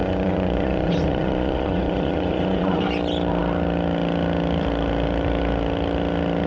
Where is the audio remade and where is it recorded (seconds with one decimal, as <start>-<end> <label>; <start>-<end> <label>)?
0.0-2.8 remade; 2.8-6.5 recorded